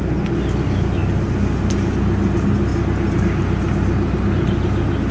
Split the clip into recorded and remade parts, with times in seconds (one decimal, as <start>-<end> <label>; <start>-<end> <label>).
0.0-5.1 recorded